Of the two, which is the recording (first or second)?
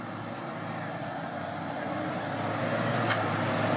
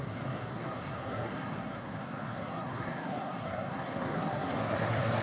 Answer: first